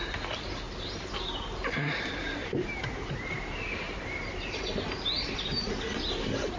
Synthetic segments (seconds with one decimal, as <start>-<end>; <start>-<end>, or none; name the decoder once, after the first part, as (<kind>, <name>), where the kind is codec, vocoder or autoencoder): 1.6-5.6 (vocoder, BigVGAN v2)